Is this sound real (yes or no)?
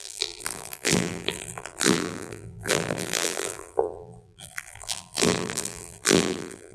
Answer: no